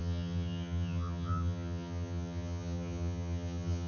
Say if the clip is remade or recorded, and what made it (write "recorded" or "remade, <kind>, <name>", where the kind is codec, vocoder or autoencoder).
remade, vocoder, HiFi-GAN